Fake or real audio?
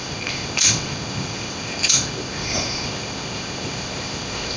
fake